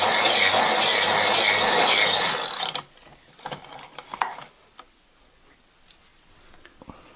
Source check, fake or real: real